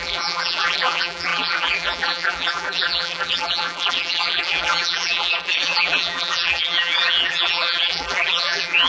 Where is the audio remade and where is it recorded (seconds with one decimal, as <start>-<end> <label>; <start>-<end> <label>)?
0.0-8.9 remade